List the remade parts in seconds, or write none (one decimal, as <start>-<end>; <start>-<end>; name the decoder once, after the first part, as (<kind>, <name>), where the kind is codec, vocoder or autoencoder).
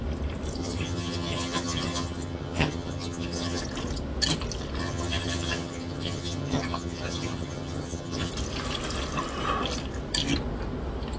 0.6-3.6 (vocoder, HiFi-GAN); 4.8-8.3